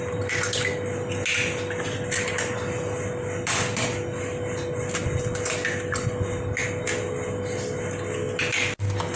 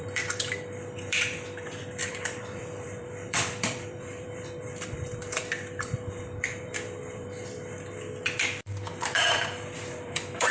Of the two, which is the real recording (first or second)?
first